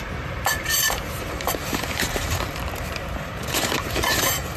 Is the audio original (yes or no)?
no